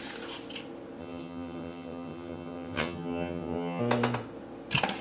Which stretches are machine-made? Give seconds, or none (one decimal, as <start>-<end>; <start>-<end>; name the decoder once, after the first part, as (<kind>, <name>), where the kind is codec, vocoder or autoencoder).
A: 1.0-3.8 (vocoder, HiFi-GAN)